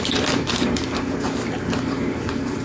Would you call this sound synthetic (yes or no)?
yes